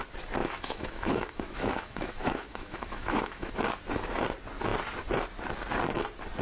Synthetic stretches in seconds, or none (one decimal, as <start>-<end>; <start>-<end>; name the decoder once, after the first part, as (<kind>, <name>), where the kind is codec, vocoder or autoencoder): 0.4-3.5 (autoencoder, DAC-VAE)